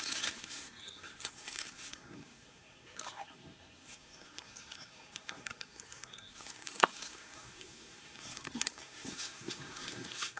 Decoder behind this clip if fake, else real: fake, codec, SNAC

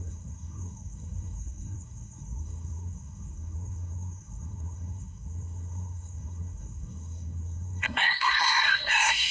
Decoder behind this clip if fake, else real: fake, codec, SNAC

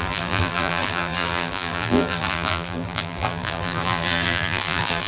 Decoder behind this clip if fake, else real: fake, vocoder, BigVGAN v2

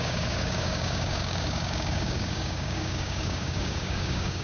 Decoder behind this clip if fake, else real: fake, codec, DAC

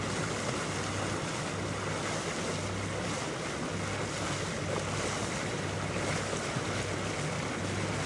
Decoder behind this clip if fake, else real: real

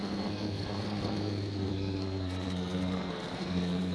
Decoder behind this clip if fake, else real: fake, codec, SNAC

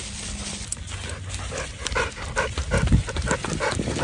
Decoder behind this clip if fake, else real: real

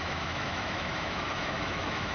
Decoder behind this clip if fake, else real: fake, autoencoder, DAC-VAE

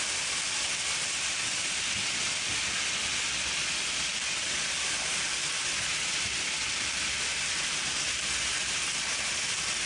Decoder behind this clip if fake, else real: real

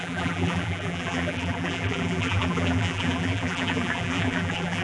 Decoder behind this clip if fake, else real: fake, vocoder, BigVGAN v2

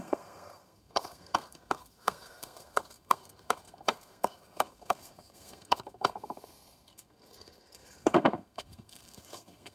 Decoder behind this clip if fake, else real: fake, codec, SNAC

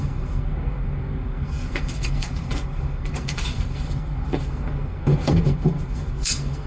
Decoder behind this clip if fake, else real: fake, codec, SNAC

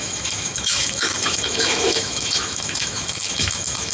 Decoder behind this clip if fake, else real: fake, autoencoder, DAC-VAE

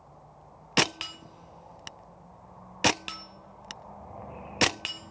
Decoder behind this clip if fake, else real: real